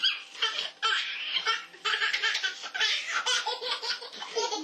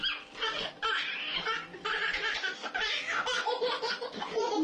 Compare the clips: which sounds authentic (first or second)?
second